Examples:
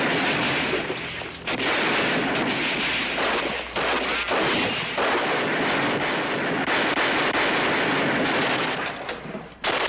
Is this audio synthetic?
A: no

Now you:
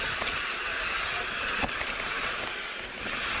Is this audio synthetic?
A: no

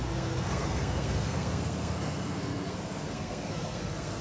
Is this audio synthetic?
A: yes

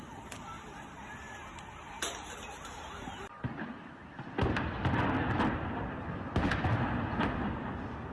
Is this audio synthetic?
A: no